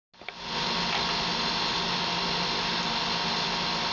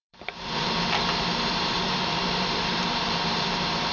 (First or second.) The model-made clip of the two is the second